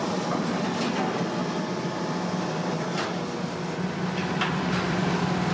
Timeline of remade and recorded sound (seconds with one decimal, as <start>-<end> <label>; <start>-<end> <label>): 0.0-0.6 remade; 0.6-5.5 recorded